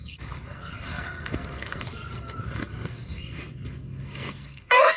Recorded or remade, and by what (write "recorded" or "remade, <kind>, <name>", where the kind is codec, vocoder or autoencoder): remade, codec, SNAC